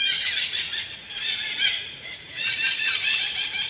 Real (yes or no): no